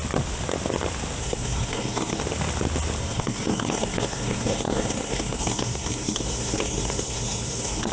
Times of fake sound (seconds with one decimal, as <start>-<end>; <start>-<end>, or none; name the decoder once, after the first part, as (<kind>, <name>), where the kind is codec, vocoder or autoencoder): 1.2-2.2 (codec, SNAC); 3.0-7.9